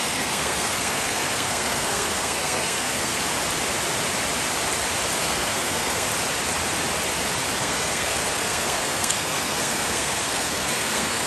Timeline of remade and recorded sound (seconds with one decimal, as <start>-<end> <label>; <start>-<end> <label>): 0.0-3.1 remade; 3.1-5.2 recorded; 5.2-6.1 remade; 6.1-7.6 recorded; 7.6-11.3 remade